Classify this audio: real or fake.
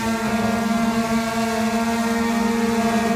real